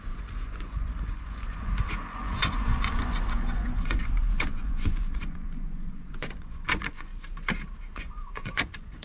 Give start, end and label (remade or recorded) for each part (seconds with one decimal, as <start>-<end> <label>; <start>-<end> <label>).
0.0-7.1 remade; 7.1-7.9 recorded; 7.9-9.0 remade